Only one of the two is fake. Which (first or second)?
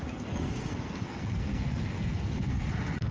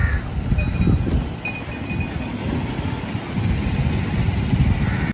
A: first